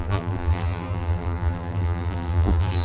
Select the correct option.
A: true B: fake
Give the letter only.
B